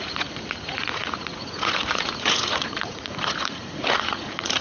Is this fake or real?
fake